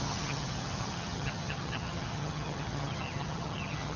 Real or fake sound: fake